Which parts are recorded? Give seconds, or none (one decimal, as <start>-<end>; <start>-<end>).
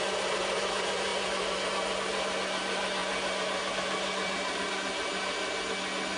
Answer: 0.0-6.2